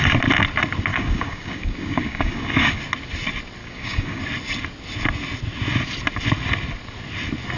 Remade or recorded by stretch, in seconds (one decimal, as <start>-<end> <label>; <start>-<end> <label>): 0.0-0.9 recorded; 0.9-2.8 remade; 2.8-3.6 recorded; 3.6-4.2 remade; 4.2-7.6 recorded